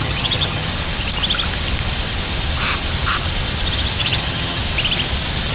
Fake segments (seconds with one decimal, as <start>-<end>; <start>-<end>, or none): 0.0-0.7; 4.0-4.6